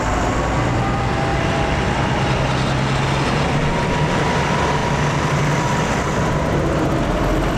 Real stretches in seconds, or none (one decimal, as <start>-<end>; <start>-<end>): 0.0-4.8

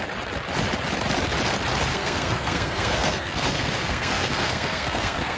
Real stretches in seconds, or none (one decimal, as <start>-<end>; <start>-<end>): 0.0-1.9

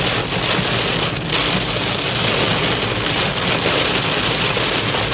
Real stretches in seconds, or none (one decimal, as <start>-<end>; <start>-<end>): 0.0-5.1

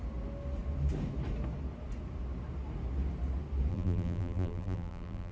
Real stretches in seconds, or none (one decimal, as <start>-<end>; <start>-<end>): 0.0-3.7

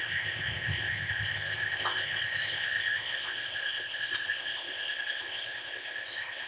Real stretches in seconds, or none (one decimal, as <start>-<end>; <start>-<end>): none

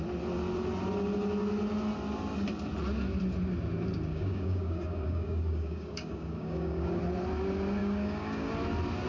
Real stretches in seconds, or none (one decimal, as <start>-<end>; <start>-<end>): 0.0-4.1; 7.0-7.8; 8.5-9.1

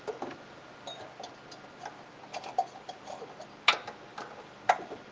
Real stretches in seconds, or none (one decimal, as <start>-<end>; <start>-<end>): 0.0-2.3; 3.3-4.1